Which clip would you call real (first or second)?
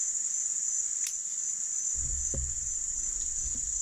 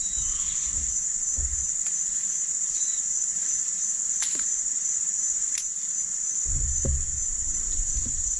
first